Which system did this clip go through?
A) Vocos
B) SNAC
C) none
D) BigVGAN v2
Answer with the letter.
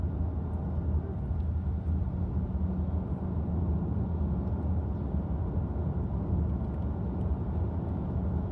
C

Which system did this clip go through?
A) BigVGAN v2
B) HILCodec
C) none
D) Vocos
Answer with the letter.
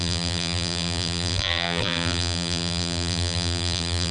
A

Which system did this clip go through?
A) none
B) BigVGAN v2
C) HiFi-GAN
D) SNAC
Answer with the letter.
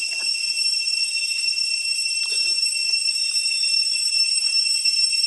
A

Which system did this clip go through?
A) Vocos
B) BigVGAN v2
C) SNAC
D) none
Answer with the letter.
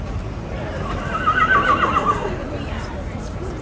B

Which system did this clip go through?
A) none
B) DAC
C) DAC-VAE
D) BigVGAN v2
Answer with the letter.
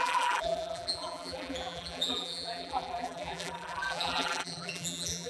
D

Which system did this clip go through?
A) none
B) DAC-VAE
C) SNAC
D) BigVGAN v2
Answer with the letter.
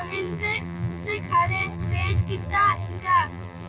D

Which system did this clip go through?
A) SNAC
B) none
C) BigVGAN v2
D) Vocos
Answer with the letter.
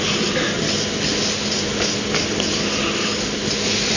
B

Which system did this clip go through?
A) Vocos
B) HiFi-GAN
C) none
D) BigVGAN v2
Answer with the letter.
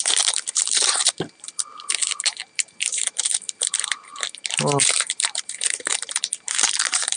D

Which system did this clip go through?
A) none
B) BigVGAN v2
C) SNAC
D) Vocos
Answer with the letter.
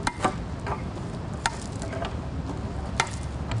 A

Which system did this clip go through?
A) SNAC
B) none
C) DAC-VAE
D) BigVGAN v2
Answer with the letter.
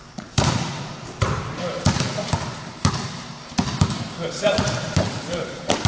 D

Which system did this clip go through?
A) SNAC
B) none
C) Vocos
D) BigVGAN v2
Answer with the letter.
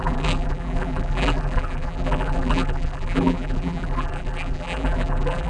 D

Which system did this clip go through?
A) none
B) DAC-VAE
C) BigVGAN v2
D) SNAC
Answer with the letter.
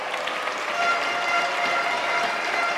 A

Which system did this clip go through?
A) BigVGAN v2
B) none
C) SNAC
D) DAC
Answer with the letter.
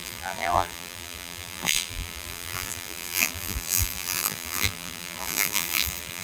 A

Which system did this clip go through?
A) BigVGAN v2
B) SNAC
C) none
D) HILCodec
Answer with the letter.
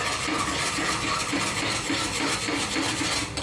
C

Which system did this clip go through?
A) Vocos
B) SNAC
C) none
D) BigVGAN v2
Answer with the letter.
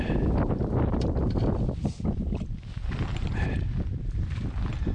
C